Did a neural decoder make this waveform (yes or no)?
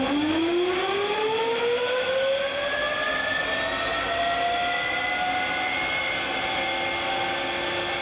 no